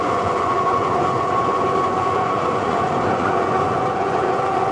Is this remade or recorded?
remade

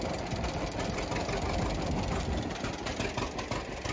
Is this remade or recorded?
recorded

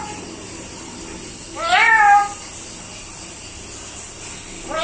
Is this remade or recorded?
recorded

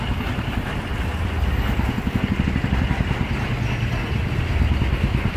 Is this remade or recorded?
recorded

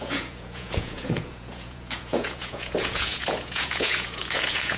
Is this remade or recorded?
remade